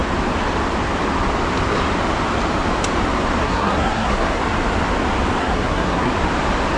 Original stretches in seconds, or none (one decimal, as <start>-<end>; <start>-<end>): 0.0-3.4; 4.4-5.4; 6.1-6.8